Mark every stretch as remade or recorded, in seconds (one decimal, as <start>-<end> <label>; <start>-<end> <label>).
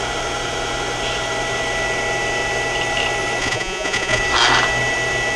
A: 0.0-3.4 recorded; 3.4-4.2 remade; 4.2-5.4 recorded